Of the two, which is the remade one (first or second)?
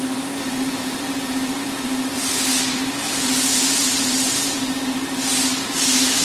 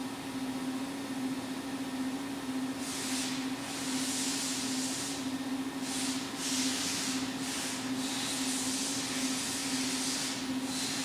first